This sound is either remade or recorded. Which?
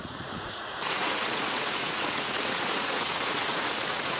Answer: remade